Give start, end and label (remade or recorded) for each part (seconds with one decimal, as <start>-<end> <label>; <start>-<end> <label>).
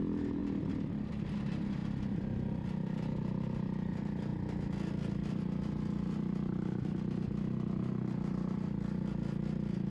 0.0-9.9 recorded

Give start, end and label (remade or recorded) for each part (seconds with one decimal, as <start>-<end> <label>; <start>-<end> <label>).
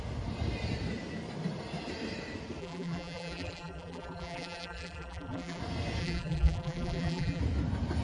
0.0-2.6 recorded; 2.6-5.6 remade; 5.6-6.0 recorded; 6.0-7.4 remade; 7.4-8.0 recorded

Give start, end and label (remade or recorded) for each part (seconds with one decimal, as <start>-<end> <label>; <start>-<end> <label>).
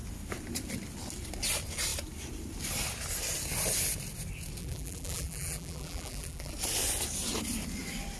0.0-4.6 recorded; 4.6-6.5 remade; 6.5-8.2 recorded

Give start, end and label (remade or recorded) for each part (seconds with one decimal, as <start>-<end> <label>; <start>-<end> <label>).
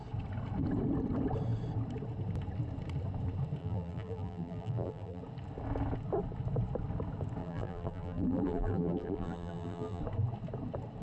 0.0-3.6 recorded; 3.6-5.2 remade; 5.2-7.4 recorded; 7.4-10.0 remade; 10.0-11.0 recorded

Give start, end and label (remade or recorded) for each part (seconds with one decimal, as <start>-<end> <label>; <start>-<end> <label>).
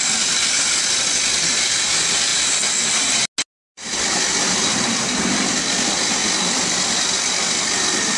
0.0-8.2 recorded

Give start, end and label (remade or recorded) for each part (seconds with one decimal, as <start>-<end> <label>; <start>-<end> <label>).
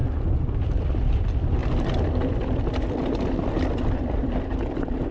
0.0-1.1 remade; 1.1-1.6 recorded; 1.6-5.1 remade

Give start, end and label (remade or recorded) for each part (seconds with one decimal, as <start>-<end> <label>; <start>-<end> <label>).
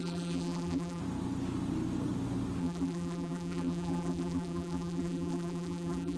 0.0-1.0 remade; 1.0-2.6 recorded; 2.6-6.2 remade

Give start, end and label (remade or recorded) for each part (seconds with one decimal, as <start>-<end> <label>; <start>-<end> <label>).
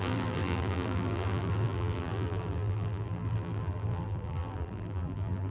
0.0-5.5 remade